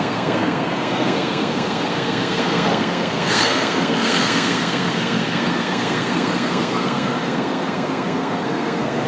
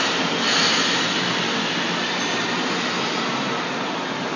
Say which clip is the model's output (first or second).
first